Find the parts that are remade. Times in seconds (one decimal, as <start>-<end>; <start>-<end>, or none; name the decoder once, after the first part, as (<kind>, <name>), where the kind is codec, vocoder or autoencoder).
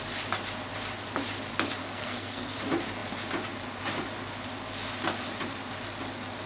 1.8-2.6 (codec, SNAC)